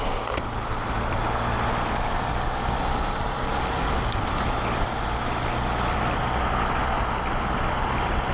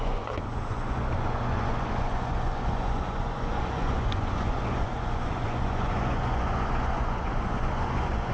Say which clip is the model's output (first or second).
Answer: second